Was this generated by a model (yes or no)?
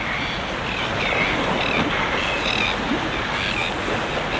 no